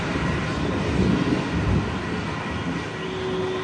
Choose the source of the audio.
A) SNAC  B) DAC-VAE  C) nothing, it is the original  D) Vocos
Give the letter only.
C